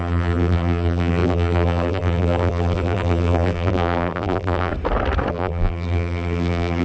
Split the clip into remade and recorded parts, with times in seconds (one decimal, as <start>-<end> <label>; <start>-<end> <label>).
0.0-4.7 remade; 4.7-5.3 recorded; 5.3-6.8 remade